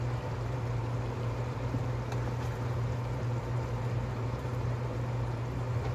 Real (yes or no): no